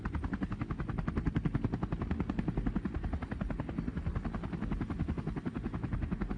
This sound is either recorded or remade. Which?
recorded